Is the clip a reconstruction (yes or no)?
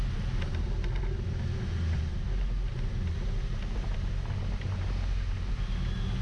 no